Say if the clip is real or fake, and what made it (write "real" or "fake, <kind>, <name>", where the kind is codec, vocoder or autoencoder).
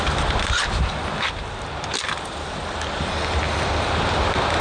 real